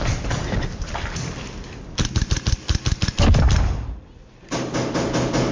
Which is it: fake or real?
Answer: real